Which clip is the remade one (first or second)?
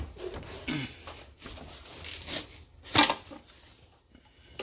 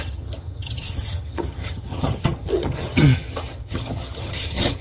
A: second